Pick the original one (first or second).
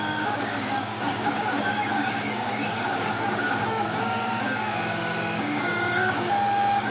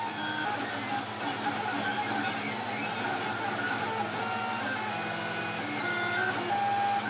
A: second